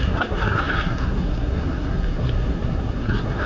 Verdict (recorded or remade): remade